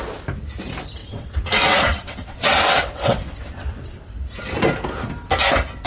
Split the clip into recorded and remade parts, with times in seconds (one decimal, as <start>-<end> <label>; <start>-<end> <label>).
0.0-1.0 recorded; 1.0-4.0 remade; 4.0-5.9 recorded